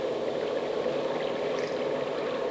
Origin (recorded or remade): recorded